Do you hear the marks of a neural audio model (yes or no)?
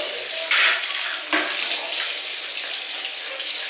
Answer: no